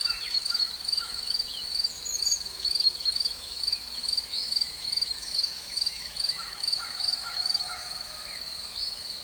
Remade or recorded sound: remade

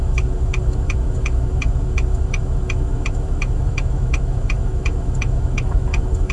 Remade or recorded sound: remade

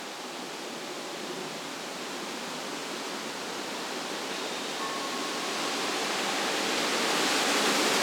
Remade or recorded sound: recorded